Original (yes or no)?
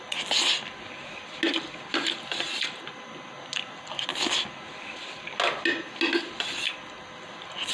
yes